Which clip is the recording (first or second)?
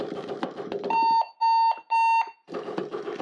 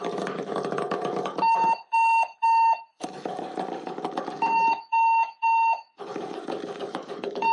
first